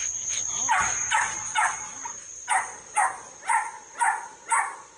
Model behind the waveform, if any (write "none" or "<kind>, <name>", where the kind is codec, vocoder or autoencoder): none